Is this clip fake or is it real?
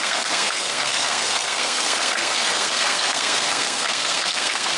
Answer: fake